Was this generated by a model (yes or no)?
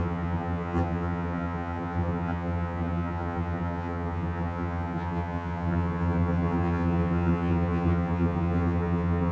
yes